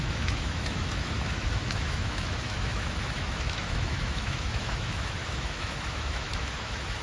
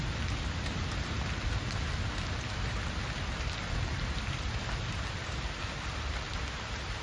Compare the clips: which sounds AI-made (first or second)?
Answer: first